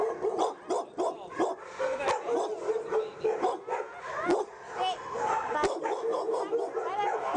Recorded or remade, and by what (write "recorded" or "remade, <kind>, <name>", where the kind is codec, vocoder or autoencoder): recorded